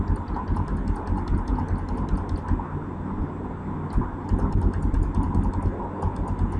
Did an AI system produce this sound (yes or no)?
no